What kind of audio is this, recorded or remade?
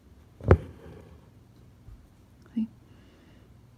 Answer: remade